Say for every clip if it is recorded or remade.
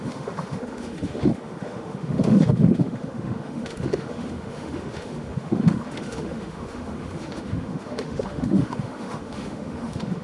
remade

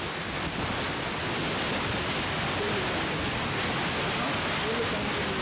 recorded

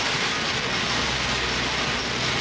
recorded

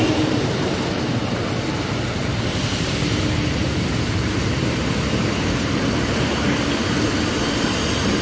remade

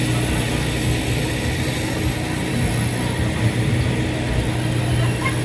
recorded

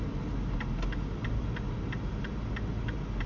recorded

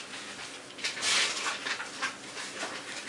recorded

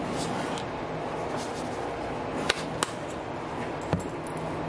recorded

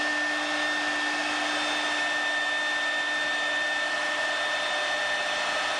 recorded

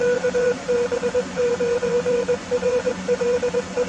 remade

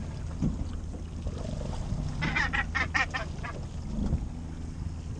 recorded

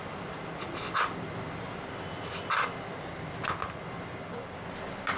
recorded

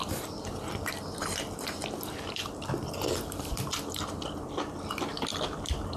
remade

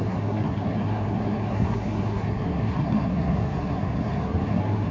remade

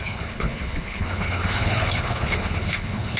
remade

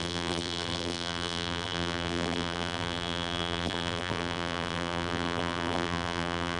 remade